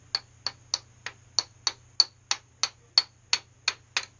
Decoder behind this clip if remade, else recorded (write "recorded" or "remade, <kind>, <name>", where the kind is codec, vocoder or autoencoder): recorded